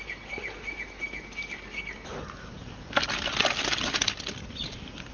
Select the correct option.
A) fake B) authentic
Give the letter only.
B